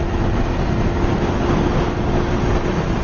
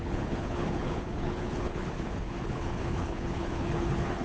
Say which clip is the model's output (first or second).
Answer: second